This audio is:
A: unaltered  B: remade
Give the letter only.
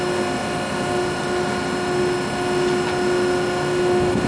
A